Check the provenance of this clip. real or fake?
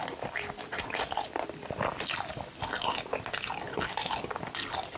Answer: real